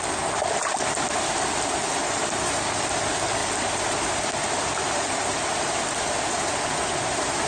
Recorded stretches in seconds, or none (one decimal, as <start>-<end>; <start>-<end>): 0.0-7.5

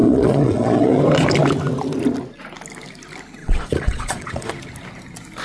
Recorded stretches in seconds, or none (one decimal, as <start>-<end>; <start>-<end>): 1.0-3.4; 4.5-5.4

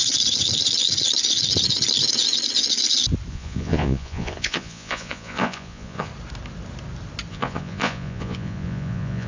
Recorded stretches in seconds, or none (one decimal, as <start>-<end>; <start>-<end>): 0.0-3.3; 6.1-7.3

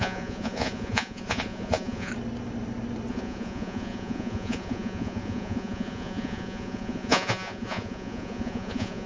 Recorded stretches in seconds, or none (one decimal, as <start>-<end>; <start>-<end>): 2.1-3.1

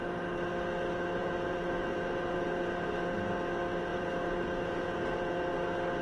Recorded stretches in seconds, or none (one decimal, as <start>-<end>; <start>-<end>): 0.0-1.2; 2.6-3.9; 5.5-6.0

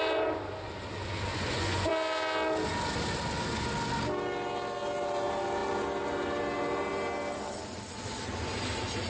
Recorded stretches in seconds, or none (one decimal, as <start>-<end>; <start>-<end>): 0.0-1.3; 1.9-9.1

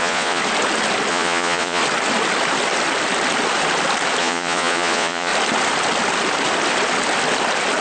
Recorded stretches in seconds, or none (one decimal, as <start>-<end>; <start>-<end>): 0.4-1.1; 1.8-4.2; 5.3-7.8